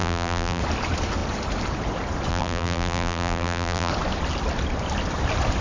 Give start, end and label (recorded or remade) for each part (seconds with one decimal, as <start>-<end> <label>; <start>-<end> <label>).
0.0-0.6 remade; 0.6-2.3 recorded; 2.3-3.9 remade; 3.9-5.6 recorded